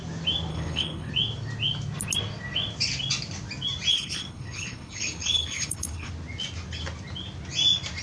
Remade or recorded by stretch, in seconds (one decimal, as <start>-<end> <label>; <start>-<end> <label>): 0.0-0.5 recorded; 0.5-1.1 remade; 1.1-3.9 recorded; 3.9-6.1 remade; 6.1-8.0 recorded